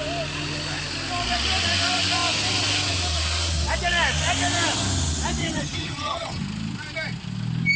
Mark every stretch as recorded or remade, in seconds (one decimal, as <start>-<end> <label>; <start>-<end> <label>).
0.0-5.4 recorded; 5.4-6.4 remade; 6.4-7.8 recorded